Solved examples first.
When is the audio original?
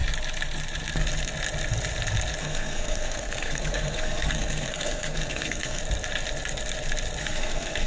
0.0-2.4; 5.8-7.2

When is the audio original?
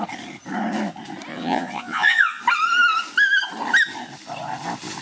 0.0-1.3; 2.4-5.0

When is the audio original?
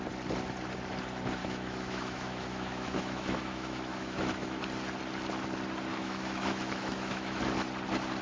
0.0-1.4; 4.6-5.9; 7.4-8.2